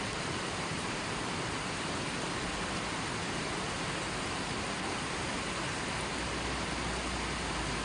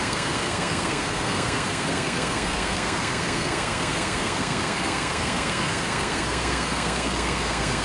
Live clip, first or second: first